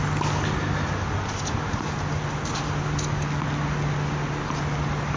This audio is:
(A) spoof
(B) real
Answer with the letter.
B